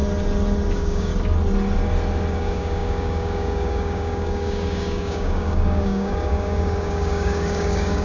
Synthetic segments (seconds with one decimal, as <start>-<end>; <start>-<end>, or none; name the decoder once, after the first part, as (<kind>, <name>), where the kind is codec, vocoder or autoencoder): 0.7-1.1 (codec, DAC); 2.3-8.0